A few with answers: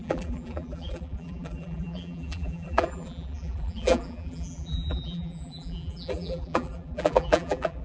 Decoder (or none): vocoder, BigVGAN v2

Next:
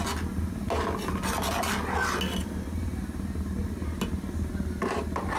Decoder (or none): none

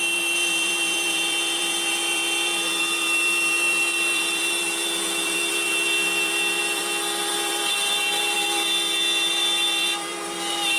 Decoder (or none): vocoder, BigVGAN v2